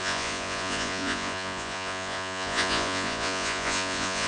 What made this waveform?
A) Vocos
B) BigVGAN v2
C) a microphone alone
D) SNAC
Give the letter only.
A